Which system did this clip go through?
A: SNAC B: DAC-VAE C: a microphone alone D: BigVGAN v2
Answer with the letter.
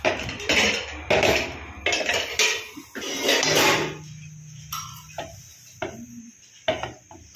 C